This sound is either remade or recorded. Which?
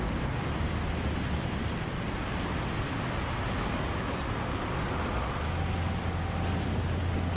recorded